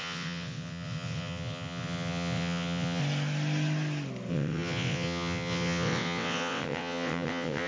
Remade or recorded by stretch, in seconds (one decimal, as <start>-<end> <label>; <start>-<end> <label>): 0.0-3.0 remade; 3.0-4.3 recorded; 4.3-7.7 remade